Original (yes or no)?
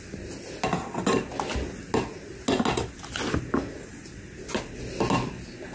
yes